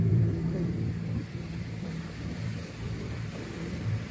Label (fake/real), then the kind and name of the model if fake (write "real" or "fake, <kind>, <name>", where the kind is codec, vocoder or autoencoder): fake, vocoder, BigVGAN v2